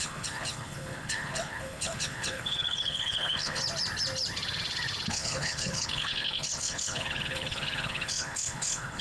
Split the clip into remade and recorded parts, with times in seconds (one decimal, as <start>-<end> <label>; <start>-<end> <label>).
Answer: 0.0-3.6 remade; 3.6-5.1 recorded; 5.1-9.0 remade

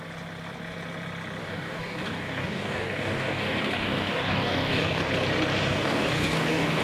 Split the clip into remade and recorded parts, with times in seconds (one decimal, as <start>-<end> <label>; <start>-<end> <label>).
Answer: 0.0-1.4 recorded; 1.4-5.1 remade; 5.1-5.5 recorded; 5.5-6.8 remade

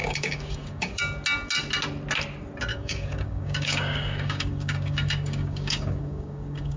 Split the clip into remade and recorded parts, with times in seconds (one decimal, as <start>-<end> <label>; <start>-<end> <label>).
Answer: 0.0-1.0 remade; 1.0-2.7 recorded; 2.7-6.8 remade

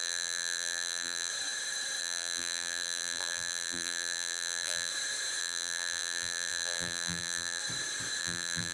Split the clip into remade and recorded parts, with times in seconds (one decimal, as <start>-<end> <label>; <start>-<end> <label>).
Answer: 0.0-1.3 remade; 1.3-2.0 recorded; 2.0-4.9 remade; 4.9-5.4 recorded; 5.4-7.6 remade; 7.6-8.2 recorded; 8.2-8.7 remade

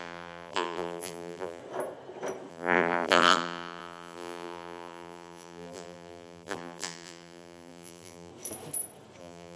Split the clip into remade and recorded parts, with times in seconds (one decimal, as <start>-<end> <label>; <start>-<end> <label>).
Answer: 0.0-1.6 remade; 1.6-2.5 recorded; 2.5-8.3 remade; 8.3-9.2 recorded; 9.2-9.6 remade

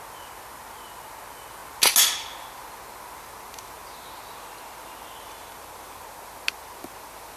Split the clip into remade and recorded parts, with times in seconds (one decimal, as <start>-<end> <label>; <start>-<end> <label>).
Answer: 0.0-7.4 recorded

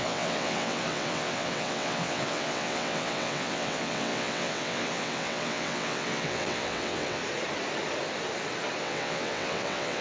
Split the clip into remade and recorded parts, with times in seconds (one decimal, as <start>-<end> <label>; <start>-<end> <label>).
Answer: 0.0-7.2 remade; 7.2-8.8 recorded; 8.8-10.0 remade